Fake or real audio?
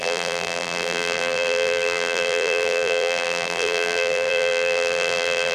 fake